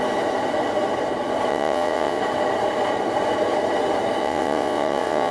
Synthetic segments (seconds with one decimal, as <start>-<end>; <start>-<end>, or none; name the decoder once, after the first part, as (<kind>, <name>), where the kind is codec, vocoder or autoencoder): 1.5-2.2 (vocoder, WaveNeXt); 4.2-5.3